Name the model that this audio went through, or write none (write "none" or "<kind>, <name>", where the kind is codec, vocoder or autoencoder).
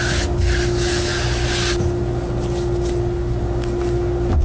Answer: none